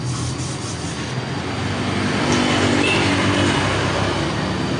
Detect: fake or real real